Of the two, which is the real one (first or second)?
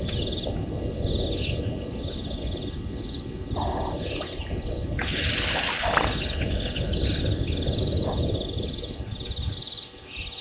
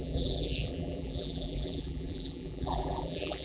first